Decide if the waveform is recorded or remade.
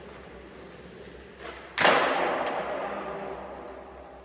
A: recorded